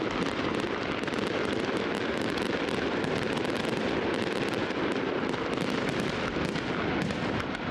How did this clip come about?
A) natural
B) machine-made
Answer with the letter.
B